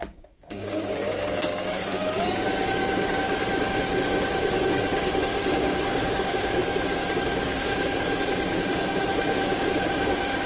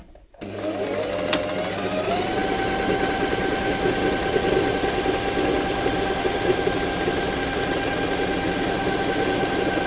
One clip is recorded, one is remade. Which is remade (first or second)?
first